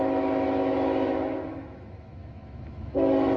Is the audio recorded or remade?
remade